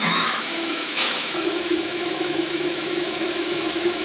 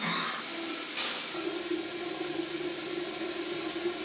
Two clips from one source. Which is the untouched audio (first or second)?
second